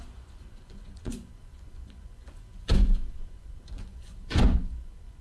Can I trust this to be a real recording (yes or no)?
no